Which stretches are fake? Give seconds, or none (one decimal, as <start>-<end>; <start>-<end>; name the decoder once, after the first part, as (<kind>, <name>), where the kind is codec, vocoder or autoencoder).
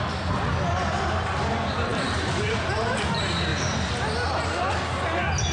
1.9-3.0 (vocoder, BigVGAN v2)